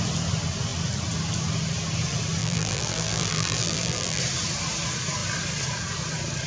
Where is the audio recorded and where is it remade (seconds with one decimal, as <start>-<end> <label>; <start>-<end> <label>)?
0.0-2.4 recorded; 2.4-4.2 remade; 4.2-6.5 recorded